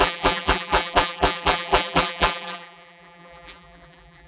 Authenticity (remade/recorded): remade